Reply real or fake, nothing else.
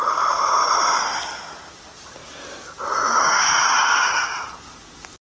real